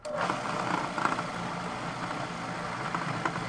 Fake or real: real